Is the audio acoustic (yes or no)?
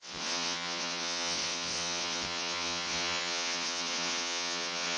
no